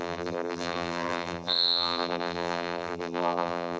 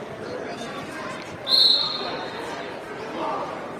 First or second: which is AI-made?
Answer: first